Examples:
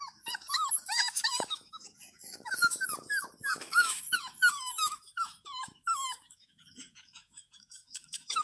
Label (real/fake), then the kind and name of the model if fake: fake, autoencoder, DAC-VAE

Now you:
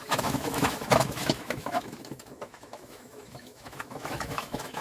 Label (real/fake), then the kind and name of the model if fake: fake, autoencoder, DAC-VAE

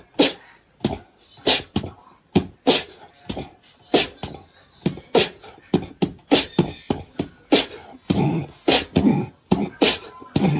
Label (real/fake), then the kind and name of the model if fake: real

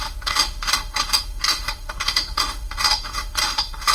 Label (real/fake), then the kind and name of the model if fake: fake, autoencoder, DAC-VAE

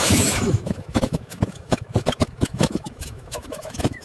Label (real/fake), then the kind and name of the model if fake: fake, autoencoder, DAC-VAE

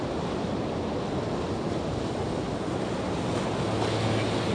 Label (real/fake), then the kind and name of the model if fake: real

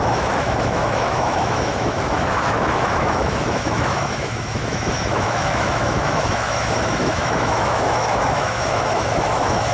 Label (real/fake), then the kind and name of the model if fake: fake, autoencoder, DAC-VAE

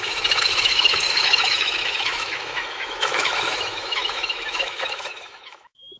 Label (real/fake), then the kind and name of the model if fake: fake, autoencoder, DAC-VAE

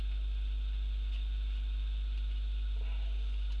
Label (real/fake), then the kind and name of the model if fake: real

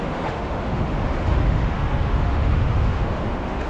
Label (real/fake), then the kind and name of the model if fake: fake, autoencoder, DAC-VAE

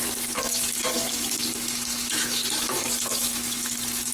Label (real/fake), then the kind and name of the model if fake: fake, autoencoder, DAC-VAE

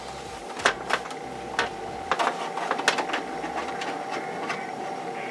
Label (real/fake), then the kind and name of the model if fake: real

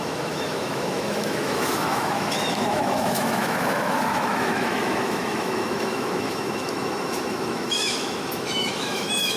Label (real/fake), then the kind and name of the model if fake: fake, autoencoder, DAC-VAE